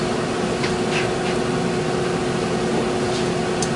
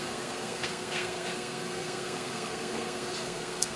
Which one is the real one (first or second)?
first